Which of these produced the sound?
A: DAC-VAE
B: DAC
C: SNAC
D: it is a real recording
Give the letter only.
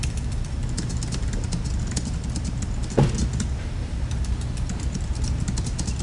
D